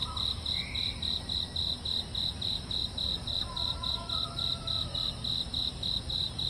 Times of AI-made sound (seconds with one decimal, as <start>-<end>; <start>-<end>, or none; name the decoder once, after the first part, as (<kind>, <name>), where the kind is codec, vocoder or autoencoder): 0.0-6.5 (vocoder, BigVGAN v2)

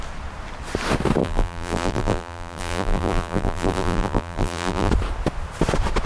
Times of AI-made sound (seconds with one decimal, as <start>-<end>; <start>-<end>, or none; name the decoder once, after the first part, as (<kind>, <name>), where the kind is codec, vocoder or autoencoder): 1.2-4.9 (vocoder, BigVGAN v2)

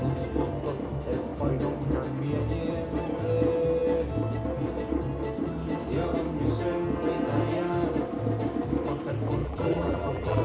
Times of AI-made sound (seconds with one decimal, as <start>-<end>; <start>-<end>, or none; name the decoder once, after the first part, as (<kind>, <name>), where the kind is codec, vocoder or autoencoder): 9.4-10.4 (vocoder, BigVGAN v2)

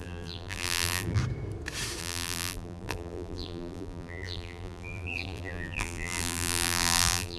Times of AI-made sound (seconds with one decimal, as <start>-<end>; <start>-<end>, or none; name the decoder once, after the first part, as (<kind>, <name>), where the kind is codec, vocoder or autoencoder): 0.0-1.2 (vocoder, BigVGAN v2); 2.0-7.4

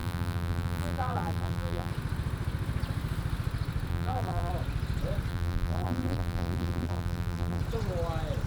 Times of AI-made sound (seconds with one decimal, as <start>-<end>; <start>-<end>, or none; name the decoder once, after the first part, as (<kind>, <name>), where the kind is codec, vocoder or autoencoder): 0.0-1.9 (vocoder, BigVGAN v2); 3.9-4.5; 5.3-7.6

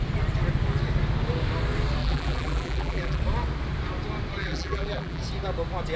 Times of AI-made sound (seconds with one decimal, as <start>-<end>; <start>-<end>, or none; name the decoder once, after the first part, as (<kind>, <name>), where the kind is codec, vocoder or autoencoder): 2.0-3.2 (vocoder, BigVGAN v2); 4.4-5.2

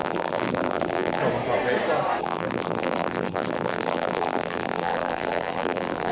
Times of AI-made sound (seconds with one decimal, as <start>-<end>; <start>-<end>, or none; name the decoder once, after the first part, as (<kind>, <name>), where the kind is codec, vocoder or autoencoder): 0.0-1.2 (vocoder, BigVGAN v2); 2.2-6.1

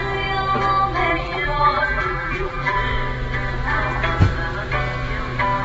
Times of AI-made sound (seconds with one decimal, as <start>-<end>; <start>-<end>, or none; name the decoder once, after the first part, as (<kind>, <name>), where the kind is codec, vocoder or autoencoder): 1.1-2.8 (vocoder, BigVGAN v2)